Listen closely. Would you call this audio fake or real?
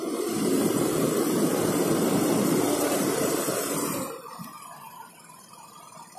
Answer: fake